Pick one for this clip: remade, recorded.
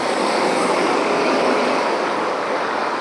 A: remade